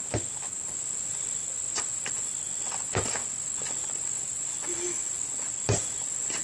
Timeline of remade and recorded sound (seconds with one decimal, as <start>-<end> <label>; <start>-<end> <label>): 0.0-6.4 recorded